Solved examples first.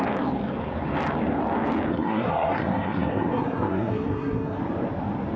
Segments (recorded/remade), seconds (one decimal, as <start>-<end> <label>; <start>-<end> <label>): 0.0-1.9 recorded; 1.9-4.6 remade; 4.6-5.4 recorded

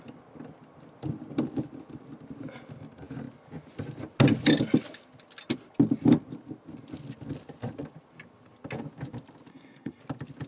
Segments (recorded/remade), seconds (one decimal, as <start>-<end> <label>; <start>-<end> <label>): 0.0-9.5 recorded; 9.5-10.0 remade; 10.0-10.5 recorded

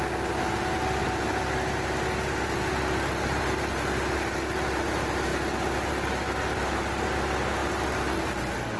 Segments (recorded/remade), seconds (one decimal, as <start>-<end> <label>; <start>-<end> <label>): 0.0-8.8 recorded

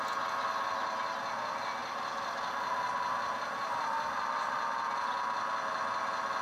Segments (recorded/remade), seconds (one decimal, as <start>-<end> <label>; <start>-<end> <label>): 0.0-6.4 recorded

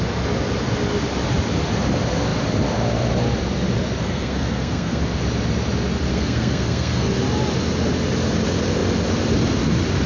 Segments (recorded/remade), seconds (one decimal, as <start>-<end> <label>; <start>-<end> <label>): 0.0-4.0 recorded; 4.0-5.0 remade; 5.0-6.1 recorded; 6.1-7.1 remade; 7.1-10.1 recorded